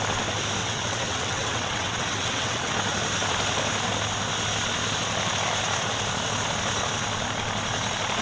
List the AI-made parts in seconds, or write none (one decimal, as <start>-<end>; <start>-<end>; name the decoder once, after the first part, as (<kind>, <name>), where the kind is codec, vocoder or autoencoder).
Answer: 0.6-2.7 (vocoder, WaveNeXt)

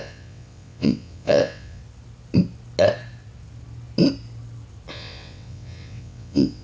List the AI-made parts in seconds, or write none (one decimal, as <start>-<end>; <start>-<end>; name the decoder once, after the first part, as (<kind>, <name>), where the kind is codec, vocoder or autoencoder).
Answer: 0.0-1.8 (vocoder, WaveNeXt); 4.9-6.6

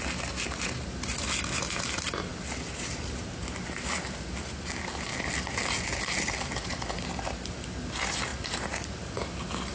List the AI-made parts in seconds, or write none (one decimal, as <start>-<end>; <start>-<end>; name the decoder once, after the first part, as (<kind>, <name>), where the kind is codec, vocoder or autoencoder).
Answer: none